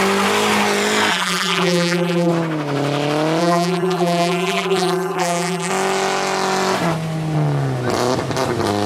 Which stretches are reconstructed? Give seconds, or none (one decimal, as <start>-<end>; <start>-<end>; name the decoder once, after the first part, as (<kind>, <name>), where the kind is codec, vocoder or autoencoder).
1.1-2.3 (vocoder, BigVGAN v2); 3.4-5.7

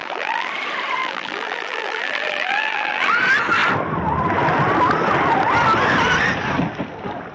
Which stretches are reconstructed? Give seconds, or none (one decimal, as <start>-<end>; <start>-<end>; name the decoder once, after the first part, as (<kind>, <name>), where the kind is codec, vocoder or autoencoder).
0.0-0.5 (vocoder, BigVGAN v2); 1.0-3.1

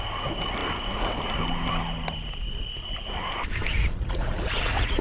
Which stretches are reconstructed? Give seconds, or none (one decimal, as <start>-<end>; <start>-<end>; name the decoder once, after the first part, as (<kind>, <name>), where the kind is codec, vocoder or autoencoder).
3.7-5.0 (vocoder, Vocos)

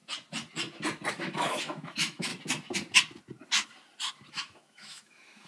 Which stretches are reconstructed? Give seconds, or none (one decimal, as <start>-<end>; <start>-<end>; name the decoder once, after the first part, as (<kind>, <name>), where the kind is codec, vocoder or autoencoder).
1.1-2.3 (autoencoder, DAC-VAE); 4.3-5.5

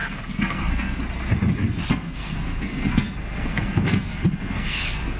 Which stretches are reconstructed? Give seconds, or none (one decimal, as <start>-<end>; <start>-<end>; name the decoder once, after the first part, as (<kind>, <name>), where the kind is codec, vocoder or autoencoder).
0.0-1.0 (codec, SNAC); 1.9-5.2